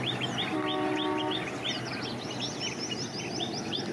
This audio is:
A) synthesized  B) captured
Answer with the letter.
B